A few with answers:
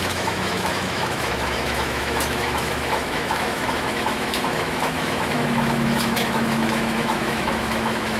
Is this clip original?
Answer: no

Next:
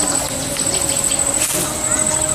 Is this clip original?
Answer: yes